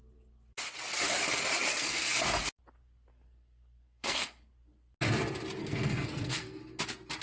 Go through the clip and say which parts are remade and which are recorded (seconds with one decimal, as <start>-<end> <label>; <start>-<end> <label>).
0.0-1.7 recorded; 1.7-2.4 remade; 2.4-3.1 recorded; 3.1-4.5 remade; 4.5-5.6 recorded; 5.6-6.6 remade; 6.6-7.2 recorded